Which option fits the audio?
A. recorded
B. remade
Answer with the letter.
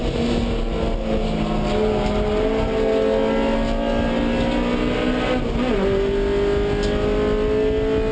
A